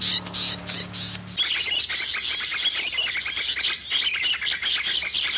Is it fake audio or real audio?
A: real